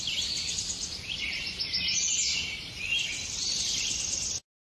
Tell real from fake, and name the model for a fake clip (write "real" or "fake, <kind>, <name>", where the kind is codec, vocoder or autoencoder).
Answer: real